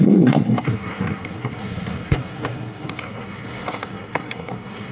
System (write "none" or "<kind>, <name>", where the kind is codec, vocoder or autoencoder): codec, SNAC